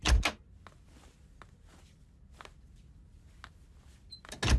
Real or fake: real